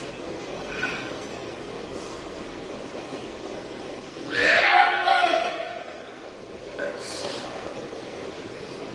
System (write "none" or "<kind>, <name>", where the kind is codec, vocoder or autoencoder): codec, SNAC